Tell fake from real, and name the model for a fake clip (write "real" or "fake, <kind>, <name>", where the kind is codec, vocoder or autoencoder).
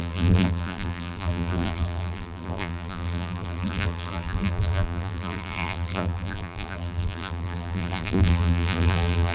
fake, vocoder, BigVGAN v2